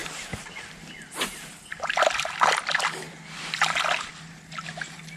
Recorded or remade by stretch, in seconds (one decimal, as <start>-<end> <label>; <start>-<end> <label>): 0.0-4.1 recorded; 4.1-5.2 remade